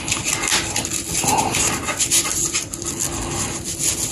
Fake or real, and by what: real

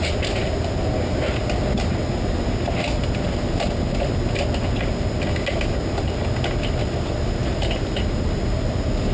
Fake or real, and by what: real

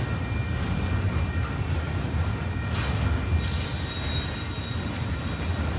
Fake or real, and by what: real